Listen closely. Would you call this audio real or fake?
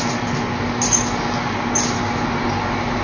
real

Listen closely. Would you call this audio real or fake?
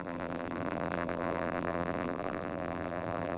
fake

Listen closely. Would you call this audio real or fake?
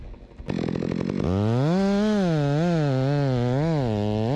real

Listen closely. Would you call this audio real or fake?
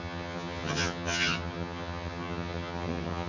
fake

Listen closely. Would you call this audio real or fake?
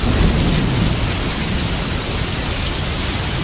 real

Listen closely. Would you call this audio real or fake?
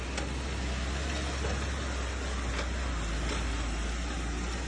real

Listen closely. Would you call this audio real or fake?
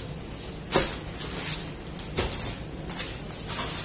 real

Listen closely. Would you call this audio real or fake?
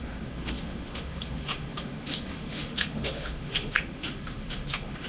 fake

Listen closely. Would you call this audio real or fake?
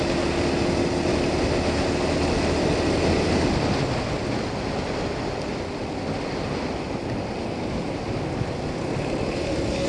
real